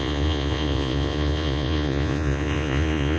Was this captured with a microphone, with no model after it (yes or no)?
no